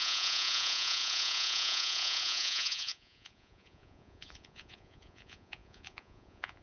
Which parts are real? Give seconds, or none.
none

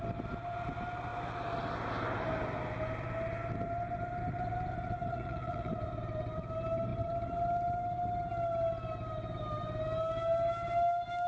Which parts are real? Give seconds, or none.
0.0-5.1; 5.7-11.3

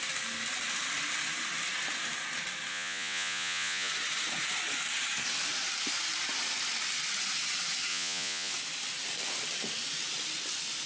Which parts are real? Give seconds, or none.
0.0-2.7; 3.9-7.9; 8.5-10.9